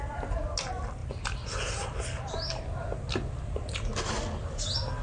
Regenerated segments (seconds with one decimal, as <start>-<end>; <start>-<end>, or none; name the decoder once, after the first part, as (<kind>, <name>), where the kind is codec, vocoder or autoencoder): 1.0-4.0 (vocoder, BigVGAN v2)